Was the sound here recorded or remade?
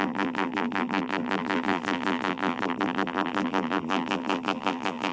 remade